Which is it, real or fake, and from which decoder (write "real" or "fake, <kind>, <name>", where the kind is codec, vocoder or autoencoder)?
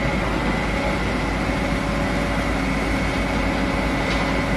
real